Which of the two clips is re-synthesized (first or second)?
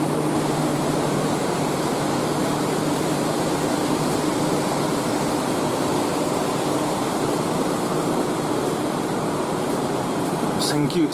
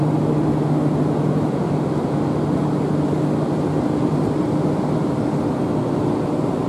first